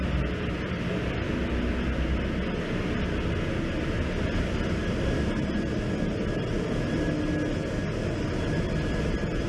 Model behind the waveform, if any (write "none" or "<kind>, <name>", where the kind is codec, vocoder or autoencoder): none